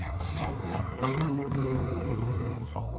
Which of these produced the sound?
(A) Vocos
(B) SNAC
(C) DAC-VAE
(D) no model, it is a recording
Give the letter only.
B